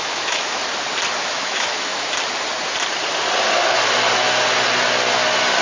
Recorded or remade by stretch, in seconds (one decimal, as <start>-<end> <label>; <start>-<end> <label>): 0.0-0.6 remade; 0.6-1.2 recorded; 1.2-1.9 remade; 1.9-5.6 recorded